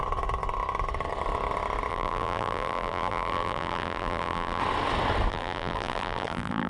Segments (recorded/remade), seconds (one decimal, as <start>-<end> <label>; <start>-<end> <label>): 0.0-1.9 recorded; 1.9-4.6 remade; 4.6-5.3 recorded; 5.3-6.7 remade